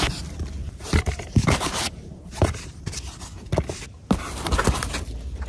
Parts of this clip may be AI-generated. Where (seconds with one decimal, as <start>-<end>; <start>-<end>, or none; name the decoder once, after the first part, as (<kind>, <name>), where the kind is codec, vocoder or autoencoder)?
0.6-2.8 (vocoder, BigVGAN v2)